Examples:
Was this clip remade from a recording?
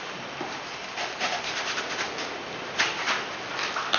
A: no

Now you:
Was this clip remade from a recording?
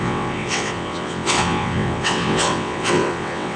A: yes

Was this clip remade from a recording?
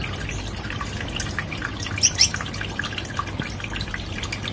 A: no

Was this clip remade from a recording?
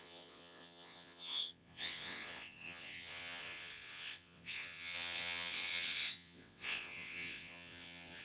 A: yes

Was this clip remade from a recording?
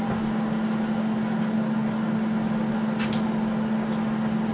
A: no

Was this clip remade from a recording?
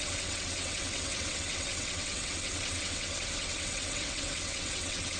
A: yes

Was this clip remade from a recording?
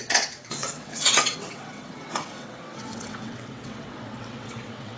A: yes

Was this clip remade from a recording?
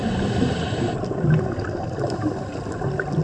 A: no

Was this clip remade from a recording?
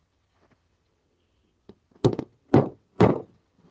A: yes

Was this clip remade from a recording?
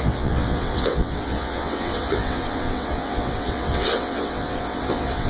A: yes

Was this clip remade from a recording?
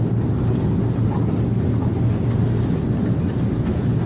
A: no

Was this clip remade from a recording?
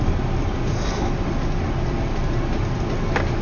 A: no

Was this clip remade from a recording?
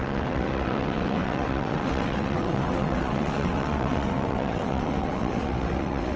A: yes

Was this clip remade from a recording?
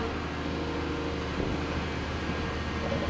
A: no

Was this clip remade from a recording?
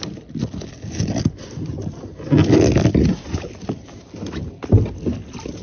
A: no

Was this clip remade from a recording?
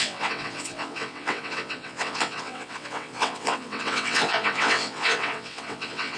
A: yes